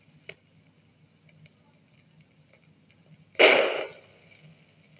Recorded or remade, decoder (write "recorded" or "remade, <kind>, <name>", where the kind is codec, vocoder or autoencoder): recorded